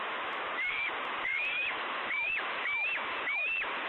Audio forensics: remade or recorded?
remade